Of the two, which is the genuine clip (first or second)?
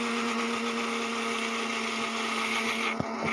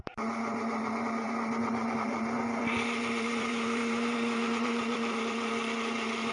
first